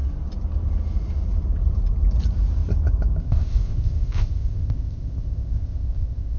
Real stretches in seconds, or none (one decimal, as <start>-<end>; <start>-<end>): 0.0-3.2